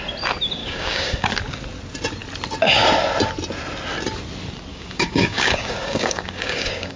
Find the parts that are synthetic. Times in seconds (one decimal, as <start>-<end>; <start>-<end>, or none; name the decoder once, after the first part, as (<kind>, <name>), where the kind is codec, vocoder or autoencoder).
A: 0.6-1.3 (codec, DAC); 4.7-7.0